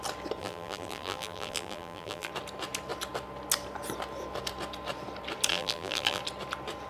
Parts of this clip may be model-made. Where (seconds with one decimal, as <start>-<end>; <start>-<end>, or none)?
0.4-2.3; 5.5-6.2